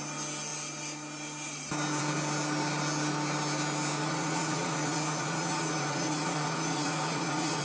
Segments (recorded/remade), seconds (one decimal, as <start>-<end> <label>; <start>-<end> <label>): 0.0-4.0 recorded; 4.0-7.6 remade